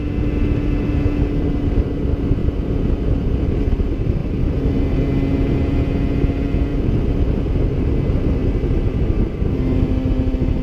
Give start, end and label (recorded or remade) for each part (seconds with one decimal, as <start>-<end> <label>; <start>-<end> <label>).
0.0-10.6 recorded